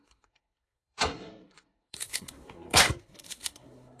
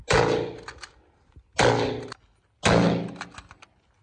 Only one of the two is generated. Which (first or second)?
first